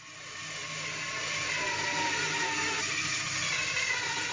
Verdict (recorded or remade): recorded